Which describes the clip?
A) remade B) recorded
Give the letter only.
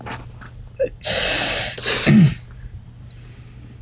B